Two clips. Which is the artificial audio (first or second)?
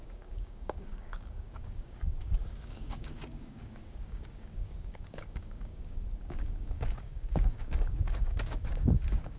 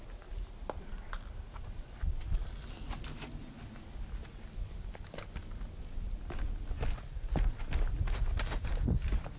first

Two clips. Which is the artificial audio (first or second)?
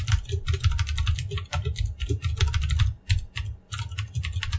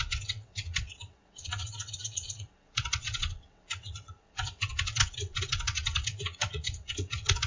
second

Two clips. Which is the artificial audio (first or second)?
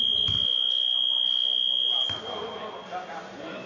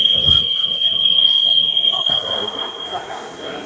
second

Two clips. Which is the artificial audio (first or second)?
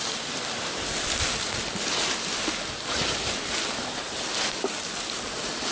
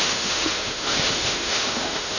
second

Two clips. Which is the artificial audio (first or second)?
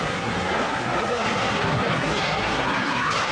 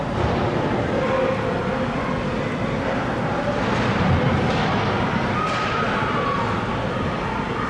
first